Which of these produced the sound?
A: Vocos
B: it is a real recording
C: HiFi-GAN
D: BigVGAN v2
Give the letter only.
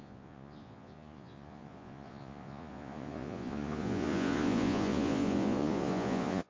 A